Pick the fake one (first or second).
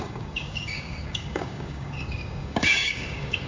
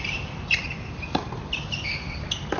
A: first